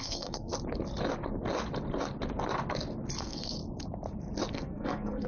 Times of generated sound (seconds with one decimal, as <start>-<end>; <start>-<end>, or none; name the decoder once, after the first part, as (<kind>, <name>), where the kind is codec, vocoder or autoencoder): 0.0-0.5 (codec, SNAC); 3.2-3.6; 4.5-5.3